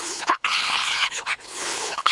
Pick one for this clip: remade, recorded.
remade